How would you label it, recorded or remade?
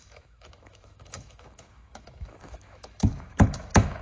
remade